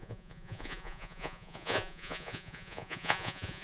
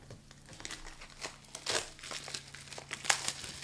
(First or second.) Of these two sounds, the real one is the second